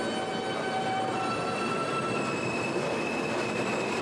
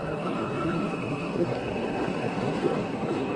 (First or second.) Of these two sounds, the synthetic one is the second